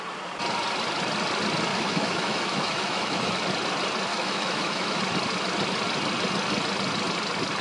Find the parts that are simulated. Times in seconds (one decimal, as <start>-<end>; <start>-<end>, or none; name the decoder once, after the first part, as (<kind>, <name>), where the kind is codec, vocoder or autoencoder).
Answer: 1.7-3.3 (autoencoder, DAC-VAE); 4.1-5.0